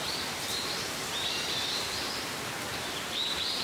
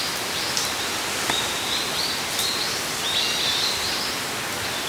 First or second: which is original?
second